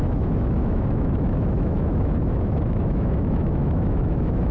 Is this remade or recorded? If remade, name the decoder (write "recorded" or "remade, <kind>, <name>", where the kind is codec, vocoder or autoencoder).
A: remade, autoencoder, DAC-VAE